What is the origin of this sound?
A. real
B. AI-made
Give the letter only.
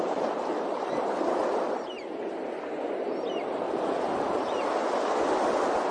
A